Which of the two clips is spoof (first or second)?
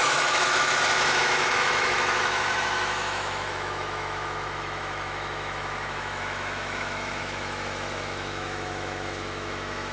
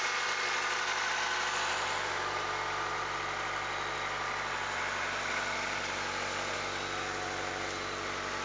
first